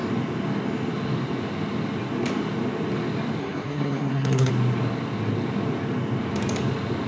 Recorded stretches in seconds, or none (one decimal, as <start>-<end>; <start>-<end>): 0.0-3.4; 4.5-7.1

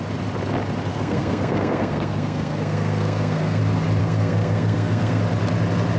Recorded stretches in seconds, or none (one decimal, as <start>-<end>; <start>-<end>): 0.0-0.9; 3.6-4.0; 5.2-6.0